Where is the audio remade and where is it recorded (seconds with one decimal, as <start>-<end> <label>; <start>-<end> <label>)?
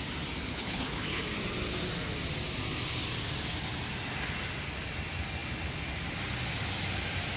0.0-0.5 recorded; 0.5-1.2 remade; 1.2-7.4 recorded